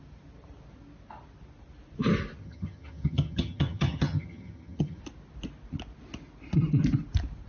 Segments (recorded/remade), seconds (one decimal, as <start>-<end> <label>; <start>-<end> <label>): 0.0-2.4 recorded; 2.4-5.0 remade; 5.0-7.5 recorded